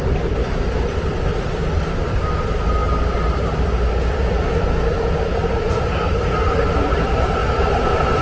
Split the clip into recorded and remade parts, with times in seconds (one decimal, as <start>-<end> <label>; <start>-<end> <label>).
0.0-2.8 remade; 2.8-4.0 recorded; 4.0-7.4 remade; 7.4-8.2 recorded